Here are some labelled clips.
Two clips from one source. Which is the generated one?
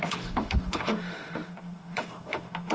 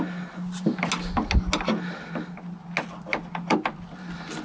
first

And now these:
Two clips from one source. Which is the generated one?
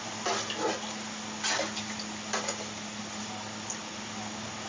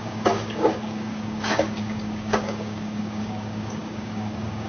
second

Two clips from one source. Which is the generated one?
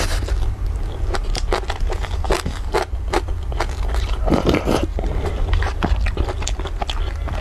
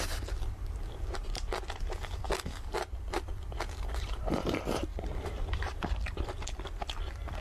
second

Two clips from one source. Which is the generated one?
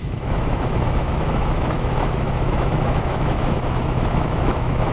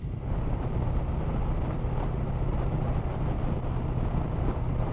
first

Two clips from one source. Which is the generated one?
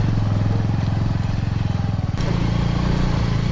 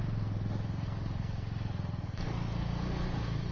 second